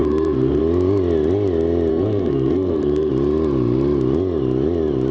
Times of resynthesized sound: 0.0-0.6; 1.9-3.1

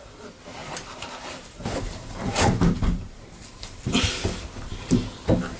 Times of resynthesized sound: 0.6-4.0

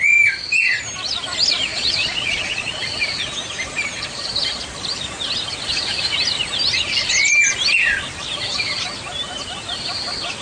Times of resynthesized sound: 1.7-2.8

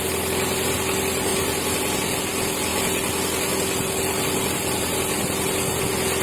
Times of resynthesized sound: none